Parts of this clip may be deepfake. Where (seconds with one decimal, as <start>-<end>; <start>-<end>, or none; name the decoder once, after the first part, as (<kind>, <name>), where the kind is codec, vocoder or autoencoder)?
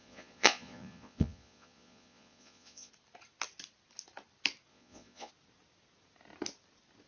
0.0-2.9 (vocoder, Vocos); 4.7-5.3